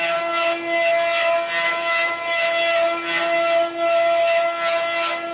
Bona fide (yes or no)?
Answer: yes